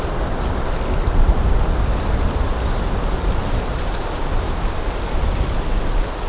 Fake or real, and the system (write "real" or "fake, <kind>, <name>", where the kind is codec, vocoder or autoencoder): real